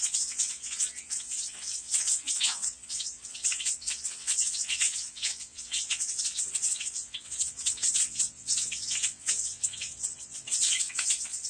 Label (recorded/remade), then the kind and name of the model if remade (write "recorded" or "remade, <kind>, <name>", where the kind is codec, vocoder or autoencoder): remade, vocoder, WaveNeXt